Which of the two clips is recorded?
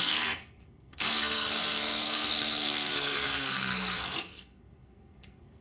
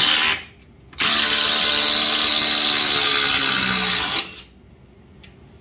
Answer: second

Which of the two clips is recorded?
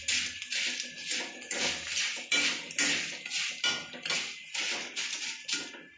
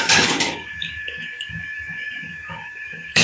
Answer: first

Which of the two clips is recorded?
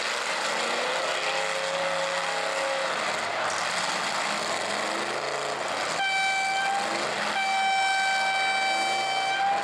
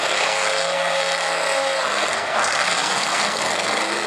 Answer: first